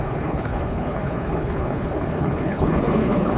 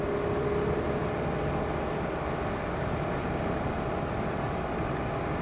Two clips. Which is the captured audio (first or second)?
second